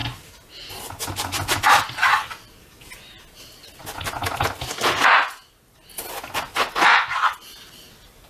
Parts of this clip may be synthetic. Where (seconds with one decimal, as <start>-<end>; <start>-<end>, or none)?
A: none